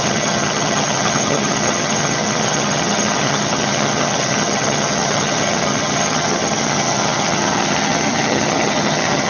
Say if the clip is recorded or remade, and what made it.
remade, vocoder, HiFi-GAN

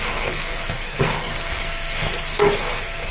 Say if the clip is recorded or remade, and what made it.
remade, codec, SNAC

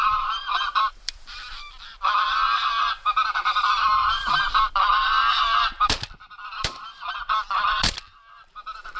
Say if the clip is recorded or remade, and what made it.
remade, vocoder, BigVGAN v2